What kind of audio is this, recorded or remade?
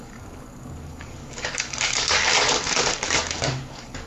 remade